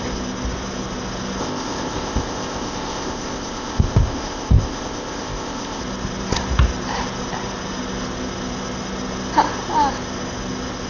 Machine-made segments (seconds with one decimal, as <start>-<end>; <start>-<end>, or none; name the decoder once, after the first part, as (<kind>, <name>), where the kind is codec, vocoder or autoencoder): 1.4-5.8 (codec, ZipCodec)